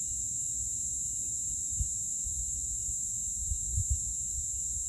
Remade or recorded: remade